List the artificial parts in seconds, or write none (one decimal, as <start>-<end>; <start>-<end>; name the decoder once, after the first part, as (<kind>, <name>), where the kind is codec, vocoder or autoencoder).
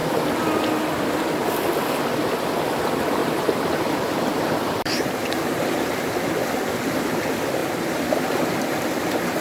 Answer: 0.6-3.2 (vocoder, BigVGAN v2); 4.3-9.4